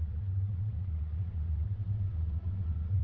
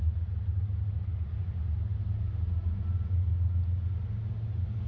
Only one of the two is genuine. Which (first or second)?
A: second